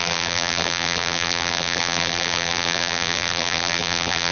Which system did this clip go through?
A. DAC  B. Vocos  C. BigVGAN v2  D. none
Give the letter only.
C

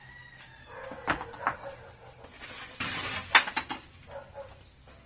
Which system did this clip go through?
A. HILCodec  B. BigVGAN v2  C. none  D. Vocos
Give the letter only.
C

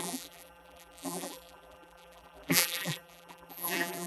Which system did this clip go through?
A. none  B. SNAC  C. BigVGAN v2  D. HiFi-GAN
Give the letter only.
C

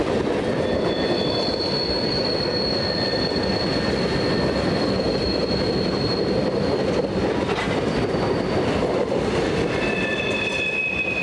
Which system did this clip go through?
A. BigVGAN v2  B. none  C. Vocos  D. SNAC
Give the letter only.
B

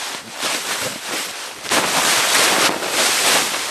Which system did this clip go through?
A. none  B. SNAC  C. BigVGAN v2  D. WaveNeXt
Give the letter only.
C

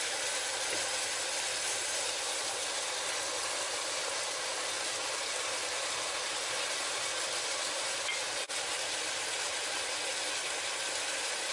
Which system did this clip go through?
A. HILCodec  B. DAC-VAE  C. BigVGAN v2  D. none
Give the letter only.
D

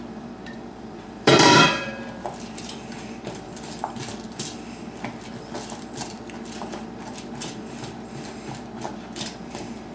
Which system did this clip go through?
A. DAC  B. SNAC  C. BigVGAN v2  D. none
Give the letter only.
C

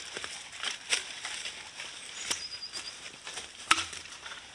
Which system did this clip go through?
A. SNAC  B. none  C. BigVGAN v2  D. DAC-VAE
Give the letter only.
C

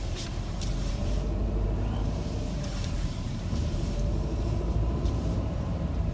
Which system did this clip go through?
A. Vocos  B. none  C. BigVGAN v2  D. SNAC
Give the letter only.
C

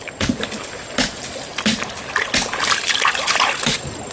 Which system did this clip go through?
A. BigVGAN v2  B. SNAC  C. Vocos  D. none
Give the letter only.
D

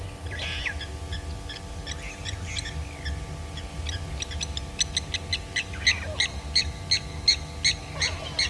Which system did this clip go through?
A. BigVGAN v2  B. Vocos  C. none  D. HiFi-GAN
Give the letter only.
C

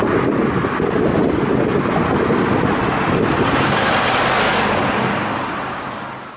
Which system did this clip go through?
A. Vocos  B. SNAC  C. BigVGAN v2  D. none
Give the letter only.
D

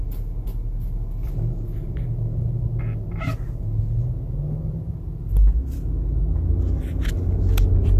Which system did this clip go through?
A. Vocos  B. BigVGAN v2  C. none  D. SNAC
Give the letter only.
C